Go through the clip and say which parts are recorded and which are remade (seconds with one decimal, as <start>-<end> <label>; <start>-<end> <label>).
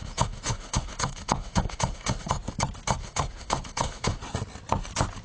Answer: 0.0-2.3 remade; 2.3-3.0 recorded; 3.0-4.2 remade; 4.2-5.2 recorded